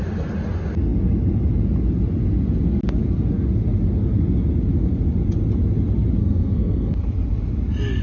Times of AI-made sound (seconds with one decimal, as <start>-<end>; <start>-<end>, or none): 6.2-7.0